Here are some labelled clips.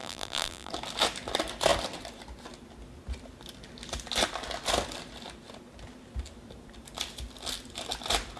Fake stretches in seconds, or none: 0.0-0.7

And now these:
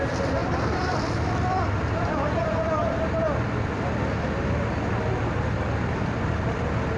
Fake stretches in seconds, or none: 0.0-2.8; 5.9-7.0

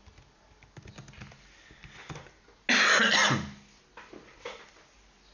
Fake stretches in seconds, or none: none

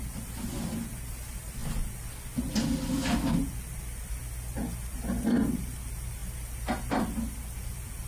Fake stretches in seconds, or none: none